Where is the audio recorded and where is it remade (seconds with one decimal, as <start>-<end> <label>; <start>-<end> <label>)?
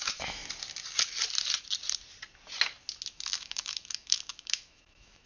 0.0-0.4 remade; 0.4-3.1 recorded; 3.1-5.3 remade